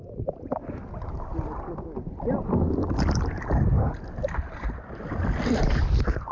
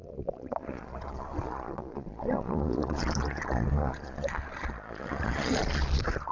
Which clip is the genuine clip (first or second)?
first